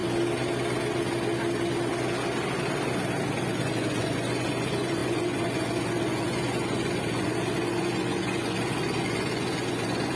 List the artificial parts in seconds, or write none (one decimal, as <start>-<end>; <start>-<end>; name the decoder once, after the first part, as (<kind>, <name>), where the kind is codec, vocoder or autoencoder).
3.3-10.2 (vocoder, Vocos)